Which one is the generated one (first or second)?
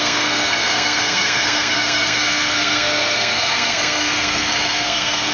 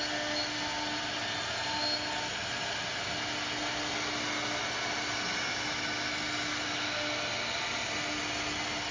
first